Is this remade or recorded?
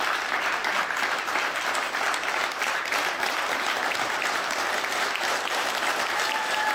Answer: remade